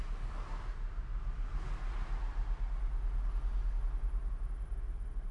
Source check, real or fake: real